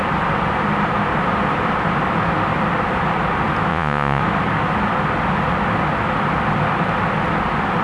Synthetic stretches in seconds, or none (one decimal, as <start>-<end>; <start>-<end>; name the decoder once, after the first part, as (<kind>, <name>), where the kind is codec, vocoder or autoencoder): 3.7-4.2 (vocoder, Vocos)